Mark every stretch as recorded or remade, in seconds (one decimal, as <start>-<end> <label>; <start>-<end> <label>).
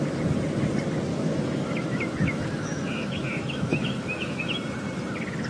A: 0.0-1.1 recorded; 1.1-4.4 remade; 4.4-5.5 recorded